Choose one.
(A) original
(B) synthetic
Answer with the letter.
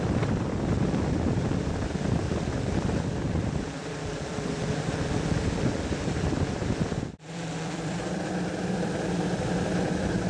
B